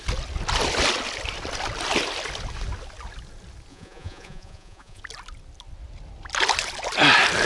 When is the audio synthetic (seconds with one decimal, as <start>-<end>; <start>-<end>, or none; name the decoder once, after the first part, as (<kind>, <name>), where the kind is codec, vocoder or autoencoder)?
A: 3.7-5.0 (vocoder, Vocos)